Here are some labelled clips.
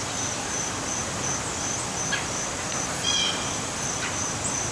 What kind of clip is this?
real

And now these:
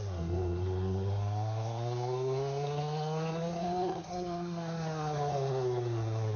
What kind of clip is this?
fake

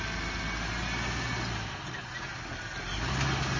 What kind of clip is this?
real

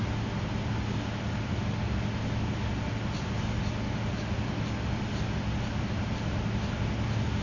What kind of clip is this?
real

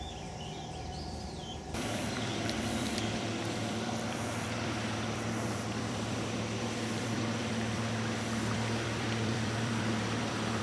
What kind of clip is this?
fake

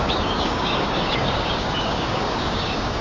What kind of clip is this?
fake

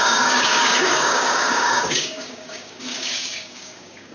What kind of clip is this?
fake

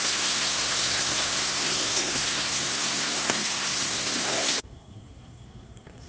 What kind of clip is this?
fake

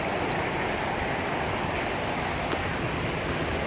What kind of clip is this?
real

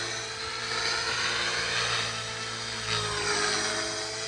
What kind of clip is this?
real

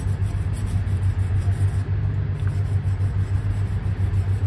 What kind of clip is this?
real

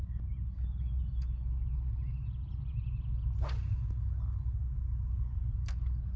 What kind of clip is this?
real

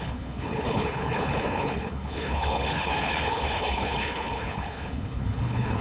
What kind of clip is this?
fake